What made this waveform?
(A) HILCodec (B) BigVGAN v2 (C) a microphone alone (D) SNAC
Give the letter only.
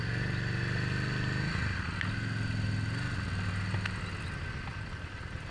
C